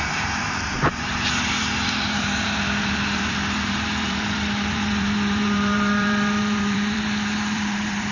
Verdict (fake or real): fake